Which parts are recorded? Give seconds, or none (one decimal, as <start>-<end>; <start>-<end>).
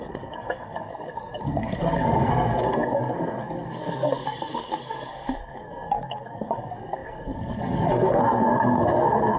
none